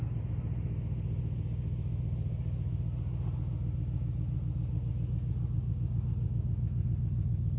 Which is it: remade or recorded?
recorded